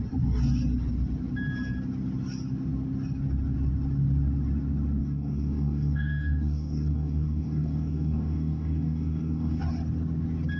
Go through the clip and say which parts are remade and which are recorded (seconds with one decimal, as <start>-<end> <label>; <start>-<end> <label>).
0.0-5.0 recorded; 5.0-9.6 remade; 9.6-10.6 recorded